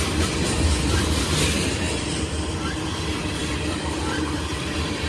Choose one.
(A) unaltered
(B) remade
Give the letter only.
B